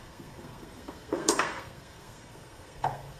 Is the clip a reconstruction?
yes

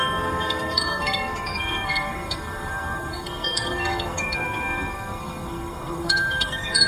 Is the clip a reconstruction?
yes